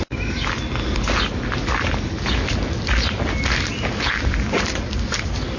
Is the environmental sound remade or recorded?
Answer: recorded